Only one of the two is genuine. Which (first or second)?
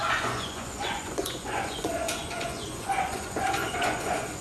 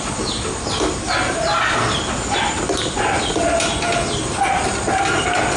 second